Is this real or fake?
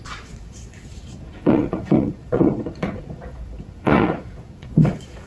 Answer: fake